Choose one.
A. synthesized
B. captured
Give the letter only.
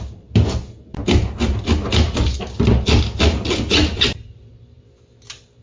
B